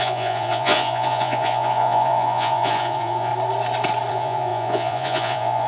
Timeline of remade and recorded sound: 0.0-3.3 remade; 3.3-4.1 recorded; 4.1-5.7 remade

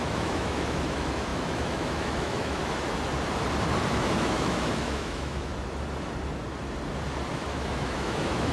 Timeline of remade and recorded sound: 0.0-2.6 remade; 2.6-3.9 recorded; 3.9-5.5 remade; 5.5-7.3 recorded; 7.3-8.5 remade

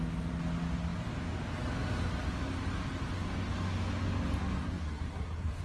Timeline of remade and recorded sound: 0.0-4.6 recorded; 4.6-5.6 remade

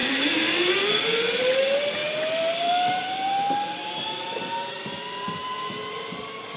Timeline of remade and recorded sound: 0.0-0.7 remade; 0.7-6.6 recorded

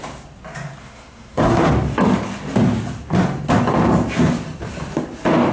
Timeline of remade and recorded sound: 0.0-0.8 recorded; 0.8-1.7 remade; 1.7-5.5 recorded

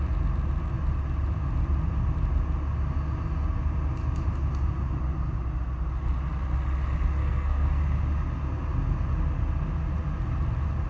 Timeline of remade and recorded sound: 0.0-7.2 recorded; 7.2-7.8 remade; 7.8-10.9 recorded